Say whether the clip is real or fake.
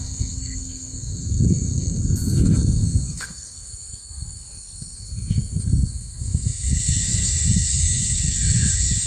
fake